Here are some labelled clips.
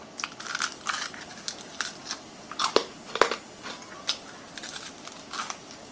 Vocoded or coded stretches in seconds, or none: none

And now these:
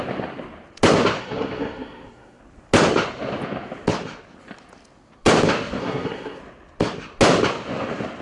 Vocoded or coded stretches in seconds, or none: 1.2-2.4 (codec, SNAC); 5.8-6.4

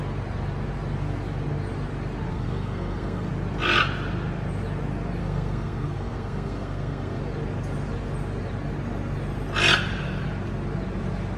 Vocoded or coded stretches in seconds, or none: 2.3-3.3 (codec, SNAC); 5.2-7.2

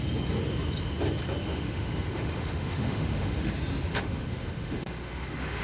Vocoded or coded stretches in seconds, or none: 1.4-3.5 (autoencoder, DAC-VAE); 3.9-5.6

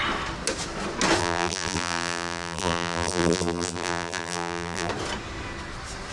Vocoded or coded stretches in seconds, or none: 1.2-4.9 (vocoder, BigVGAN v2)

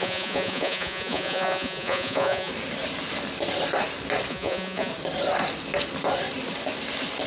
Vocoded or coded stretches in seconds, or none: 0.0-2.5 (vocoder, Vocos); 4.3-4.9